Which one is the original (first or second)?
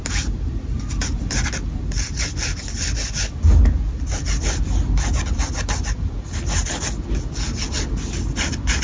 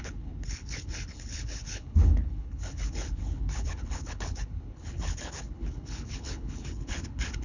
first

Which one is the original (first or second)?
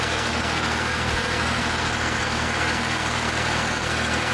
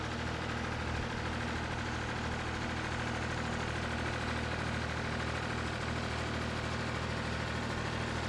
second